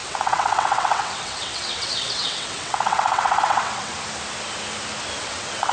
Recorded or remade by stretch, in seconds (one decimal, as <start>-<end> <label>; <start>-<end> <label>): 0.0-3.9 remade; 3.9-5.2 recorded; 5.2-5.7 remade